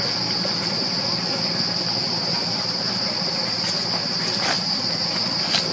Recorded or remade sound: recorded